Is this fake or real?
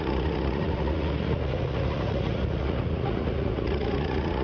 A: fake